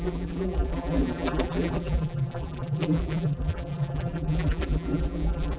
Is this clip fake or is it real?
fake